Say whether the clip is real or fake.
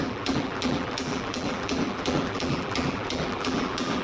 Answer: fake